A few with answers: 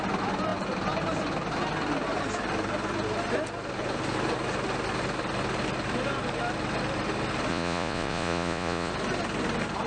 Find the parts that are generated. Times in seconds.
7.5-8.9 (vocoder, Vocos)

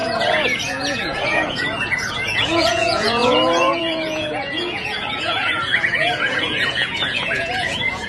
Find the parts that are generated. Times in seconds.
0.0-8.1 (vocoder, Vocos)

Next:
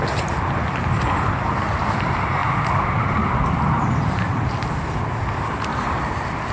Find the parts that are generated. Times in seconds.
none

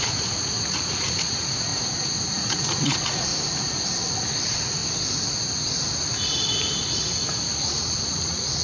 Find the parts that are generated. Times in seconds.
0.0-1.7 (vocoder, Vocos); 2.3-3.3; 4.2-4.8; 7.6-8.6